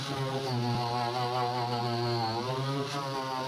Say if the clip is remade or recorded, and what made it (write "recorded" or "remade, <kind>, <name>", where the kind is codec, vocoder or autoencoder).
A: recorded